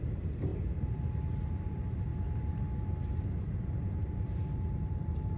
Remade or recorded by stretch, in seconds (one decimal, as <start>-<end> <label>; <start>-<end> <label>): 0.0-2.1 remade; 2.1-3.4 recorded; 3.4-5.4 remade